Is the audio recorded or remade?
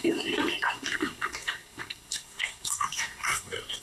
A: remade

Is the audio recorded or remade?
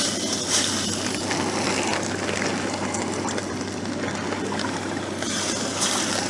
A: recorded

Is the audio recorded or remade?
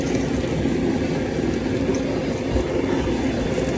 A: recorded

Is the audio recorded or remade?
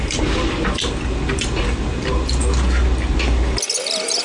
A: recorded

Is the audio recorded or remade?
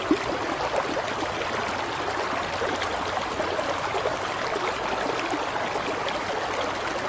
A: recorded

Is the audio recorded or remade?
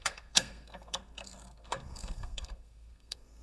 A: remade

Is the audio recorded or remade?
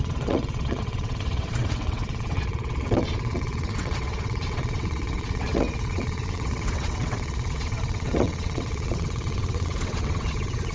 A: remade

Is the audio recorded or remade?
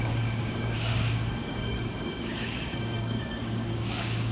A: remade